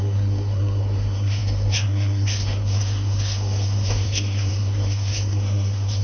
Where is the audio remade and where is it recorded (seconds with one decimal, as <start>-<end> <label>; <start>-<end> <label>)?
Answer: 0.0-6.0 remade